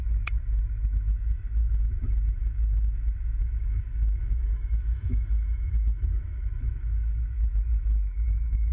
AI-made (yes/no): yes